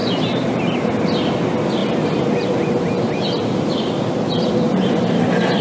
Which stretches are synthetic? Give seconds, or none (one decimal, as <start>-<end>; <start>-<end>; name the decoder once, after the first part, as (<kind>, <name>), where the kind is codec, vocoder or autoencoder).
0.0-1.3 (vocoder, BigVGAN v2); 1.8-5.6